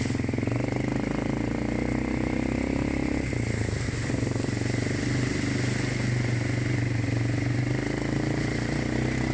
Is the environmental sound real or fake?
real